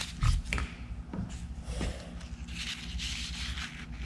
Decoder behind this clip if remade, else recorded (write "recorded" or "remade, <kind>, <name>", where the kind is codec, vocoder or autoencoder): recorded